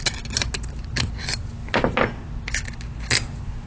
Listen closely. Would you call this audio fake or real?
real